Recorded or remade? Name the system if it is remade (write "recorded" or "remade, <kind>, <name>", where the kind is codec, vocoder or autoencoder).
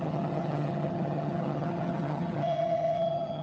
remade, vocoder, HiFi-GAN